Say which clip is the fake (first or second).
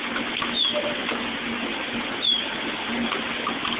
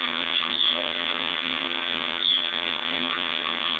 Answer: second